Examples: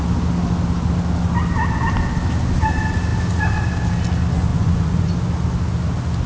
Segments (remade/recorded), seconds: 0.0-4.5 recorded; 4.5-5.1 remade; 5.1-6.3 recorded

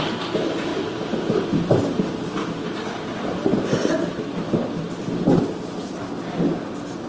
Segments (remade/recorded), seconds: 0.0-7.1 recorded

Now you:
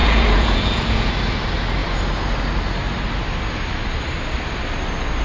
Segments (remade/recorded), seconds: 0.0-1.1 remade; 1.1-5.2 recorded

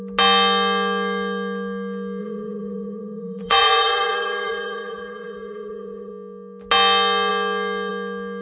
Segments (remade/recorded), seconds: 0.0-2.2 recorded; 2.2-6.1 remade; 6.1-8.4 recorded